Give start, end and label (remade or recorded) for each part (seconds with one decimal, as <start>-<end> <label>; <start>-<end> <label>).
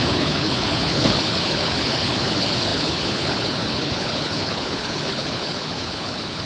0.0-6.5 remade